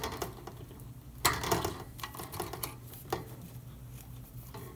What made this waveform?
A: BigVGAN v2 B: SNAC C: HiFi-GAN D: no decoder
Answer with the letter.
D